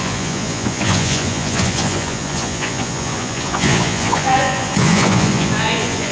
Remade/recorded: remade